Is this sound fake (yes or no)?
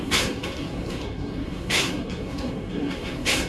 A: yes